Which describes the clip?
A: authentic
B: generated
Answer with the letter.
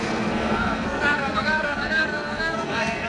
B